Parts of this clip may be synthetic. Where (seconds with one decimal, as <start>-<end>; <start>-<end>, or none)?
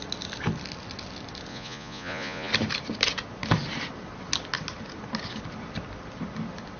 1.5-2.5